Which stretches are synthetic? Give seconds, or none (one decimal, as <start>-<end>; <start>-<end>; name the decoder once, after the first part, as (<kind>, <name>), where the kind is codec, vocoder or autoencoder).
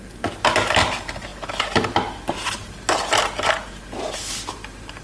none